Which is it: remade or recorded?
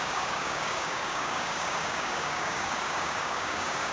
remade